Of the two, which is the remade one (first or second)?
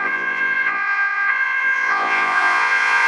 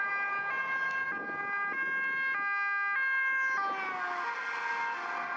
first